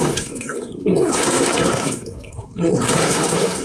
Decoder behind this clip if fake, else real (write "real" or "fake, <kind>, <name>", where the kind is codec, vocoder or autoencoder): fake, codec, SNAC